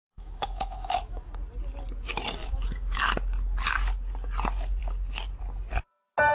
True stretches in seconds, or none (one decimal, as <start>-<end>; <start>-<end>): 1.3-2.4; 3.0-6.3

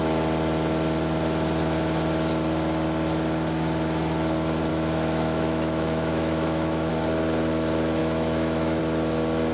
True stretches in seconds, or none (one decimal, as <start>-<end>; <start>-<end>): 0.0-4.7; 6.9-8.0; 8.8-9.5

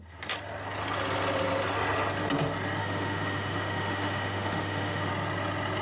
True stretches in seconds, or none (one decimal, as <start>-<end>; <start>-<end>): 0.0-2.8; 5.1-5.8

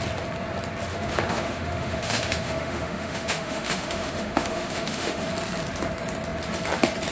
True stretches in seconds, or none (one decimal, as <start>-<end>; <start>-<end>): 0.0-0.9; 5.2-7.1